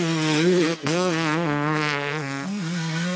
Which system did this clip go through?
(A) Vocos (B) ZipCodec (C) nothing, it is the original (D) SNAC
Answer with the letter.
D